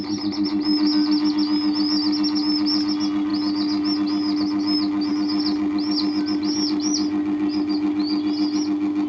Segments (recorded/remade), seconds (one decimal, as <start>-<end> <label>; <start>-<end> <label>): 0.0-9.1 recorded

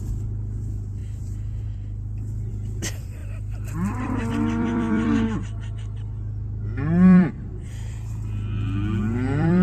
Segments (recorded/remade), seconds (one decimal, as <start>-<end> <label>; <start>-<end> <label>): 0.0-9.6 remade

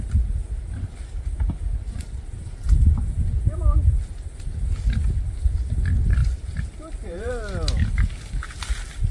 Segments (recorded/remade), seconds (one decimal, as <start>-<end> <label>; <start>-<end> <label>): 0.0-6.2 recorded; 6.2-7.3 remade; 7.3-9.1 recorded